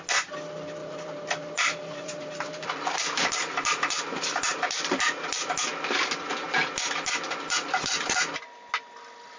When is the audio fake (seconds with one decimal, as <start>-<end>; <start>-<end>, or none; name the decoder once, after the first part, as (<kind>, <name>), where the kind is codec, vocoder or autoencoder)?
0.8-5.5 (vocoder, BigVGAN v2)